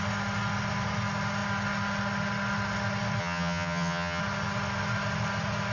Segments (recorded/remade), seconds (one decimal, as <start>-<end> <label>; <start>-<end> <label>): 0.0-3.2 recorded; 3.2-4.2 remade; 4.2-5.7 recorded